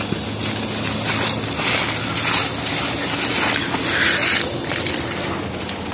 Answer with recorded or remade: recorded